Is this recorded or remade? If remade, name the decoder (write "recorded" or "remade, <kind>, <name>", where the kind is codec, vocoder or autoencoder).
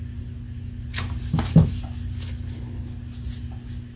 recorded